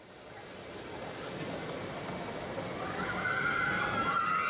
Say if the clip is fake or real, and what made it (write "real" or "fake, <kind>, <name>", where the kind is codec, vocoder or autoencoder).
real